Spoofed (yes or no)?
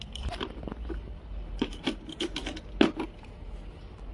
no